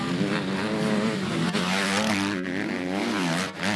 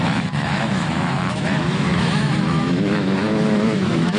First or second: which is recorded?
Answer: first